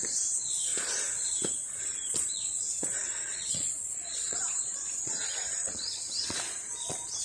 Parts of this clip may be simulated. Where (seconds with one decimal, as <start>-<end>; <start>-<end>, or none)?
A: 0.0-0.7; 1.8-7.2